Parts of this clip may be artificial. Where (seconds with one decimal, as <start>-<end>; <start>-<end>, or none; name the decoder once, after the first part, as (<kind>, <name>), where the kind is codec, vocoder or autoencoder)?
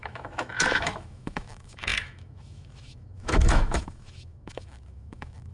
0.0-5.5 (autoencoder, DAC-VAE)